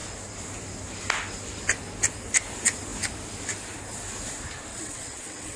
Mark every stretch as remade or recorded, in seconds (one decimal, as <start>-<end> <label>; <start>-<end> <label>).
0.0-4.7 recorded; 4.7-5.6 remade